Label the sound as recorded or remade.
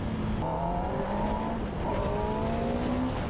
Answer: recorded